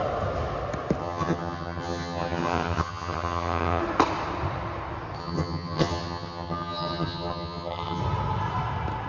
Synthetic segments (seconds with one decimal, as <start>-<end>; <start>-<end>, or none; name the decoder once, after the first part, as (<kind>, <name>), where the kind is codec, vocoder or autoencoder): 1.0-3.8 (vocoder, HiFi-GAN); 5.2-8.0